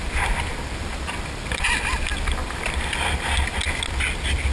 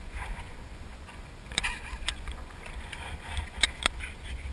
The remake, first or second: second